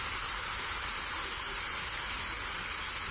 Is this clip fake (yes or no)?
no